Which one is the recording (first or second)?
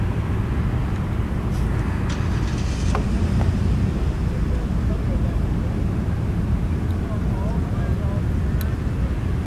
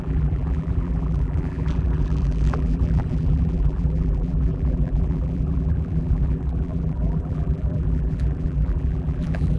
first